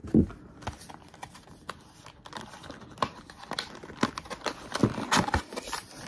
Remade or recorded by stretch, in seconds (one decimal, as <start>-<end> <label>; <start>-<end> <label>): 0.0-6.1 recorded